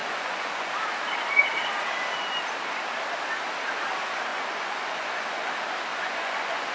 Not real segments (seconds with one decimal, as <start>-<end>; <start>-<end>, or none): 0.0-0.7; 4.3-5.5; 5.9-6.7